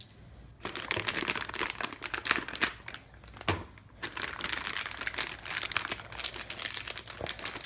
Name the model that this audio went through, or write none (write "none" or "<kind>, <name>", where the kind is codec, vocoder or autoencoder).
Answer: none